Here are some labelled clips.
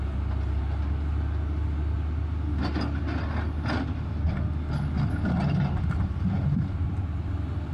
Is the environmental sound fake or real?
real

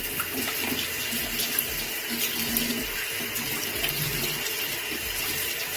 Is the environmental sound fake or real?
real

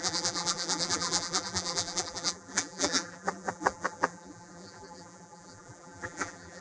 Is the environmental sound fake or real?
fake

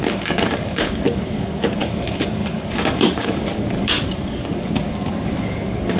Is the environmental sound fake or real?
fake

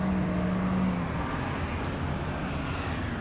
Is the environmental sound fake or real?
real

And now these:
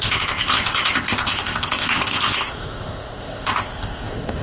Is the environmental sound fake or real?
fake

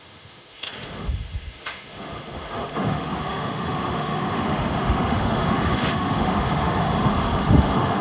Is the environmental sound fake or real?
fake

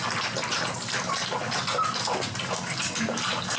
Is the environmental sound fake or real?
real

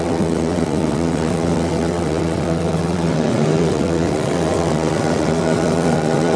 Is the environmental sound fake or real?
fake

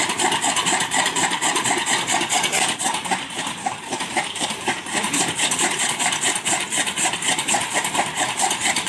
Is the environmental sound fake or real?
fake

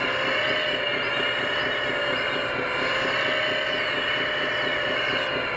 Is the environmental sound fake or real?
real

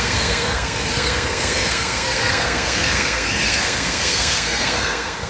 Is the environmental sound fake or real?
fake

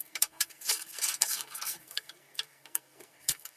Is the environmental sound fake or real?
fake